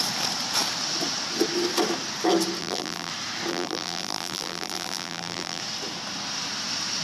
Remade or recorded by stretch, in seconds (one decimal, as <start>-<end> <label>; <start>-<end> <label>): 0.0-2.6 recorded; 2.6-3.1 remade; 3.1-3.5 recorded; 3.5-5.6 remade; 5.6-7.0 recorded